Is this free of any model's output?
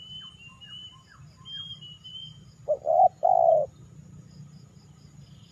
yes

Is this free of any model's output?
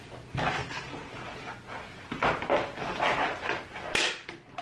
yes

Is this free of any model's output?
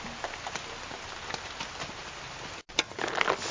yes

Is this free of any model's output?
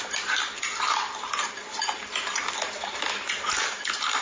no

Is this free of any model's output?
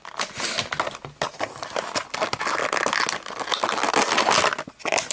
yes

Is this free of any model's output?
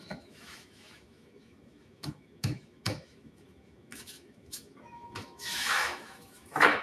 no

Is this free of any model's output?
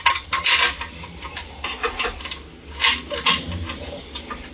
yes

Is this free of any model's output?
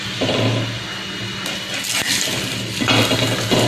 yes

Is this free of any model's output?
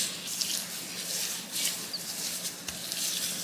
yes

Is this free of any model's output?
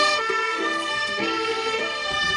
no